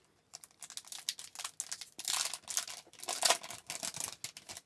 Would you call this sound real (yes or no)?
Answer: yes